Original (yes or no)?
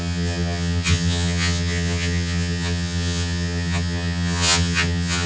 no